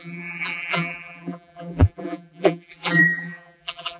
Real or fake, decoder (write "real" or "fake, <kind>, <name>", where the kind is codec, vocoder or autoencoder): fake, vocoder, BigVGAN v2